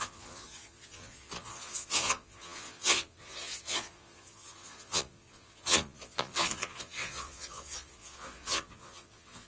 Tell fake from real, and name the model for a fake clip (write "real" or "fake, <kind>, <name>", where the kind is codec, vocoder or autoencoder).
fake, vocoder, Vocos